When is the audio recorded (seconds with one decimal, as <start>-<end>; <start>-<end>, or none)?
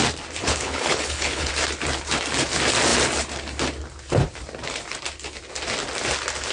0.0-0.4; 1.5-6.5